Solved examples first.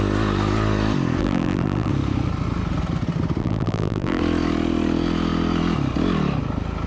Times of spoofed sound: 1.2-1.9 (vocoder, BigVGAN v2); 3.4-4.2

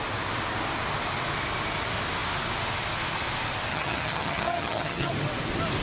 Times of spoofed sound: 3.7-5.1 (vocoder, HiFi-GAN)

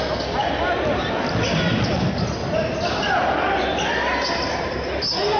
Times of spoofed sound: none

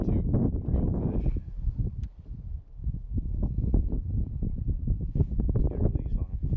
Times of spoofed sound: 2.8-3.5 (autoencoder, DAC-VAE)

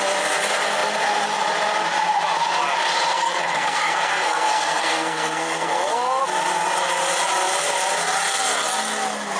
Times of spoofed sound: 3.1-6.2 (codec, SNAC)

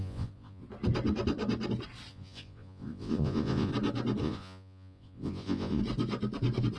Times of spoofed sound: 0.0-0.6 (vocoder, Vocos); 2.1-3.7; 4.2-5.8

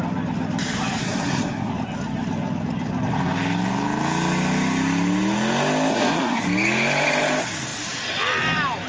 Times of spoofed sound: 1.0-1.7 (codec, SNAC); 5.9-6.4